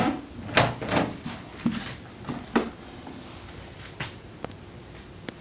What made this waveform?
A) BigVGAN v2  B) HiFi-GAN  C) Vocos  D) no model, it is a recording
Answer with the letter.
D